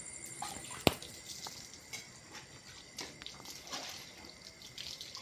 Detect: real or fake real